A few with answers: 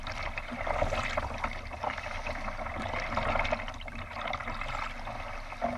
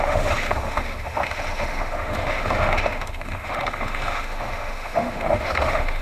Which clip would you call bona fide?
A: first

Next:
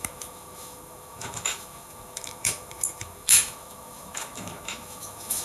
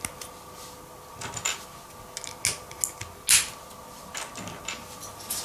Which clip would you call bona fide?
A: second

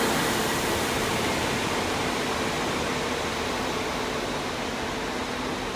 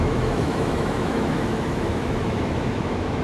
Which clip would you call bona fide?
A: first